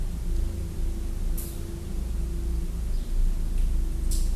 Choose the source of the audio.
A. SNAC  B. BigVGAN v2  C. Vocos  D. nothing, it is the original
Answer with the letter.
D